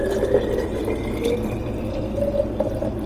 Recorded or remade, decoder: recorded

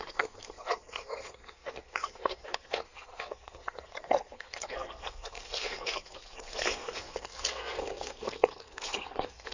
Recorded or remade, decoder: remade, codec, SNAC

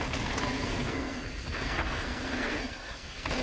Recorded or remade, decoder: remade, codec, SNAC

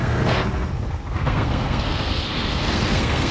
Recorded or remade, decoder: remade, codec, SNAC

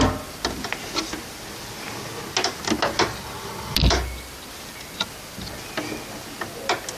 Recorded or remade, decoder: recorded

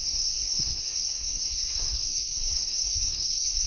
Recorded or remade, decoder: remade, codec, SNAC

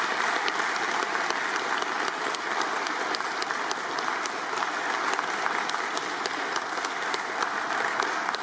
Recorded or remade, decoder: recorded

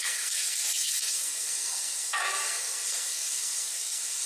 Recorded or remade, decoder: remade, codec, SNAC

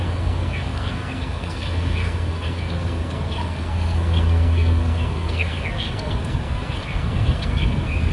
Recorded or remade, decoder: remade, codec, SNAC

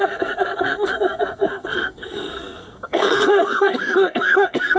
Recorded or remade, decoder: remade, codec, SNAC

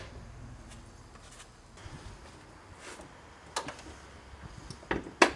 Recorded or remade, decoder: recorded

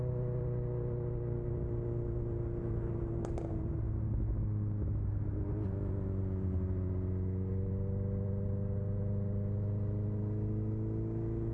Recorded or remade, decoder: recorded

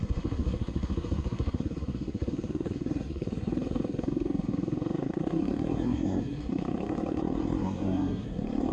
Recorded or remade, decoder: remade, codec, SNAC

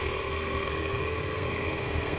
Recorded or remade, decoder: remade, codec, SNAC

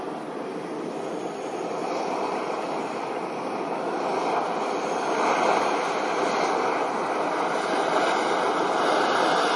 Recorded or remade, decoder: recorded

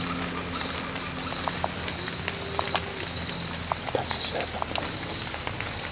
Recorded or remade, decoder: recorded